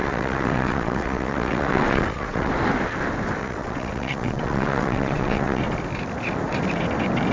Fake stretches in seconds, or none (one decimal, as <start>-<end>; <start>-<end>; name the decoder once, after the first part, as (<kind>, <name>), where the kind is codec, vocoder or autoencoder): 0.0-2.5 (vocoder, WaveNeXt); 3.4-5.6